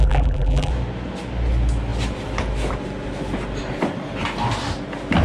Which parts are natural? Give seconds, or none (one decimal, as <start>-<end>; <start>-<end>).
0.7-5.2